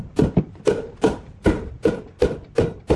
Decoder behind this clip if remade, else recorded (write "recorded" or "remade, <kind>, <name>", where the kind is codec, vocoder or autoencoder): recorded